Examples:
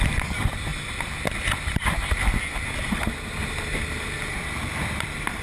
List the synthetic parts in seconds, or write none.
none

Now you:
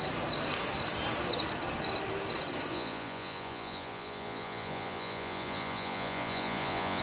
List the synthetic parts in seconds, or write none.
2.7-7.0 (vocoder, Vocos)

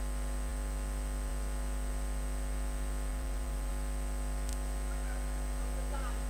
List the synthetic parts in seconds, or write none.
3.1-3.7 (vocoder, BigVGAN v2)

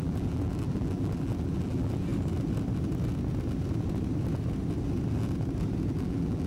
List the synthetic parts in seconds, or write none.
0.0-2.1 (vocoder, BigVGAN v2); 6.0-6.5

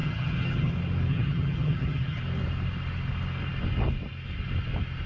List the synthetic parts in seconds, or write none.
0.0-0.7 (vocoder, HiFi-GAN); 1.1-2.2

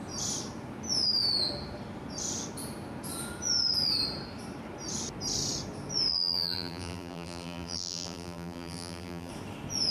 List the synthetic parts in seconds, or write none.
6.1-9.3 (vocoder, BigVGAN v2)

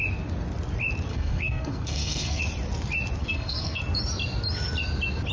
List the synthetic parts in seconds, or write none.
1.1-2.4 (codec, SNAC); 3.2-3.8

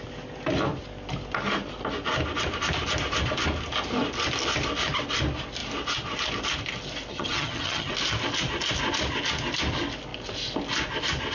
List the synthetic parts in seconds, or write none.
7.1-7.9 (vocoder, HiFi-GAN)